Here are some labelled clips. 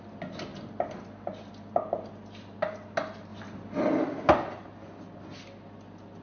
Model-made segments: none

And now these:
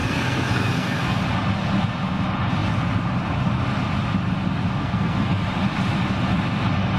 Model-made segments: 0.0-1.2; 4.8-5.4

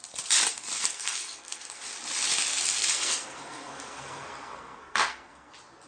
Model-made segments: 0.5-1.8; 2.5-5.5

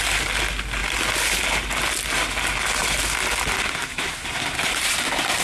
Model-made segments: none

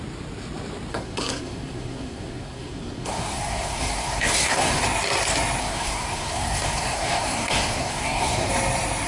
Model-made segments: 0.9-4.8; 5.6-8.5